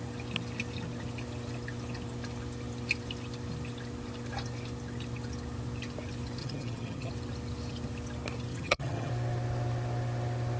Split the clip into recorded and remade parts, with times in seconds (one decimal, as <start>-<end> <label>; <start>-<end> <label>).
0.0-6.4 recorded; 6.4-7.1 remade; 7.1-8.5 recorded; 8.5-9.1 remade; 9.1-10.6 recorded